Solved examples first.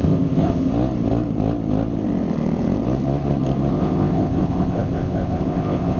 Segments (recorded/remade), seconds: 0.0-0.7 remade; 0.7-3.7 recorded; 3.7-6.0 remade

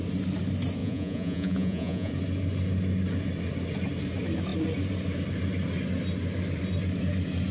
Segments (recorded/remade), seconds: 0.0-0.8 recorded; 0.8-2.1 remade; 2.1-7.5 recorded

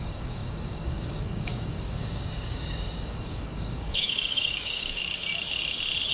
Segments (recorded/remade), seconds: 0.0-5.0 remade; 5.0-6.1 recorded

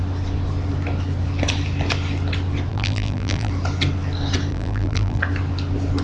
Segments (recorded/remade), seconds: 0.0-2.7 recorded; 2.7-3.5 remade; 3.5-4.5 recorded; 4.5-5.2 remade; 5.2-6.0 recorded

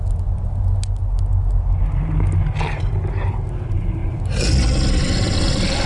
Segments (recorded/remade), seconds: 0.0-5.9 recorded

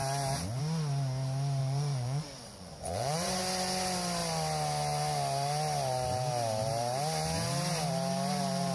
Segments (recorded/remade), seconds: 0.0-1.6 recorded; 1.6-3.4 remade; 3.4-8.7 recorded

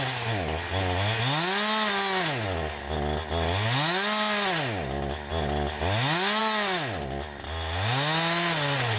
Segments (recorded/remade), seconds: 0.0-9.0 recorded